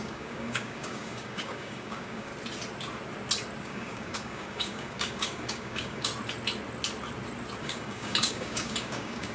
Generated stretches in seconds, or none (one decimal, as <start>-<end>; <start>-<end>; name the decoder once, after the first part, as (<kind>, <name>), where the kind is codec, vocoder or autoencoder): 0.0-2.3 (codec, DAC); 3.6-6.1; 7.6-9.3